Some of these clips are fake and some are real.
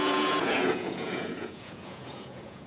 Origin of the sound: fake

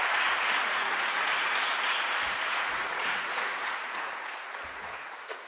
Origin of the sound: fake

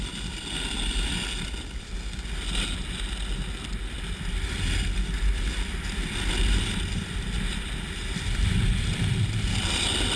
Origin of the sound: real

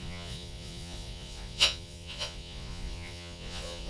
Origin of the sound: fake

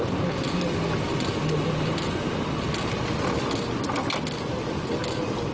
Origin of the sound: real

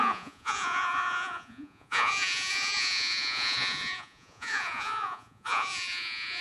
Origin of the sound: fake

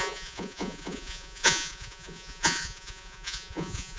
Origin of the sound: fake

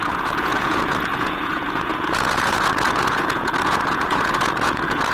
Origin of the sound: fake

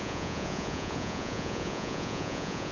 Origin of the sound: fake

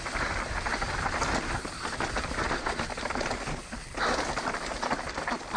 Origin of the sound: real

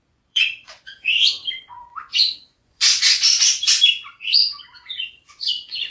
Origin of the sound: fake